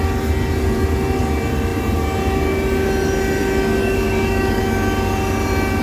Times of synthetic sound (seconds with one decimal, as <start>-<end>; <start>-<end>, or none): 3.8-4.6